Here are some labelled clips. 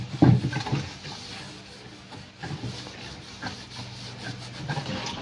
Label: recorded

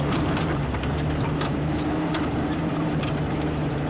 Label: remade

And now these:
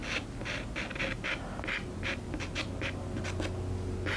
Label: recorded